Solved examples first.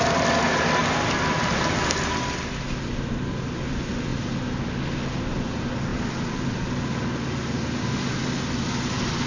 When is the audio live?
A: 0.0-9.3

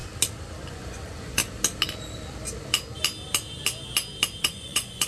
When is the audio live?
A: 0.0-0.7; 1.4-4.4

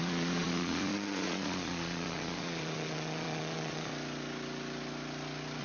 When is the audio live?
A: 3.9-5.6

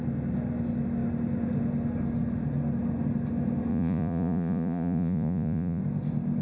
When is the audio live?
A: 0.0-3.7; 5.8-6.4

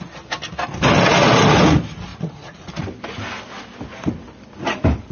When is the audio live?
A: 0.0-2.1; 2.7-5.1